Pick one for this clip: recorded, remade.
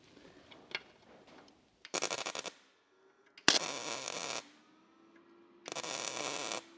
recorded